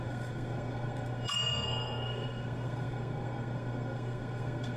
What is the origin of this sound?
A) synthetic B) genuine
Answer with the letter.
A